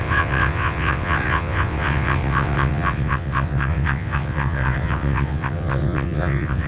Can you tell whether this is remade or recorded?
remade